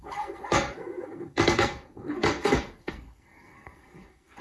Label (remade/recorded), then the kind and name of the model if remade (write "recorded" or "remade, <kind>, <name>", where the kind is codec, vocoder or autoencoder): remade, codec, SNAC